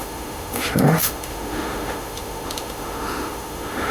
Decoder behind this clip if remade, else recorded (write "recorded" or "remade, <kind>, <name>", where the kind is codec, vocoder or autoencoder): remade, autoencoder, DAC-VAE